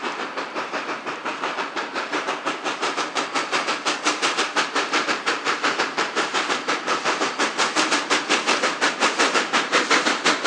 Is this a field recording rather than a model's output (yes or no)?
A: no